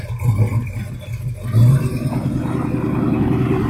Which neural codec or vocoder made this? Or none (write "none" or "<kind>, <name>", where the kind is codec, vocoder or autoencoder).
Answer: none